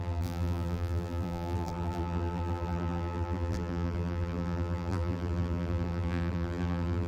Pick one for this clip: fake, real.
fake